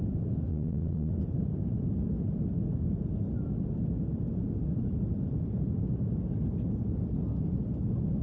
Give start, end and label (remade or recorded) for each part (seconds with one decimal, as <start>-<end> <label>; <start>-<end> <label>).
0.0-0.5 recorded; 0.5-1.1 remade; 1.1-8.2 recorded